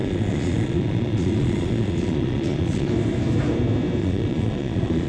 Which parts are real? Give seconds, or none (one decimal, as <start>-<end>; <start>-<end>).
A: 2.9-4.0